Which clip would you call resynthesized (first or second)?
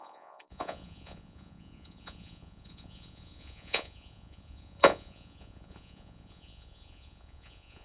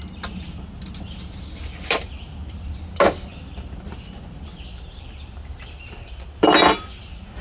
first